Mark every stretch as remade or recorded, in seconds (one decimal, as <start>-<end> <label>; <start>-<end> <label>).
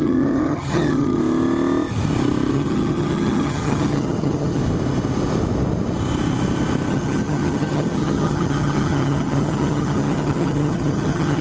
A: 0.0-1.2 remade; 1.2-2.5 recorded; 2.5-4.6 remade; 4.6-6.9 recorded; 6.9-11.4 remade